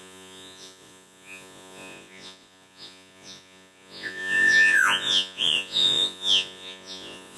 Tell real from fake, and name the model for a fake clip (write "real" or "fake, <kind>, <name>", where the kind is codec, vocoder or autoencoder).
fake, vocoder, Vocos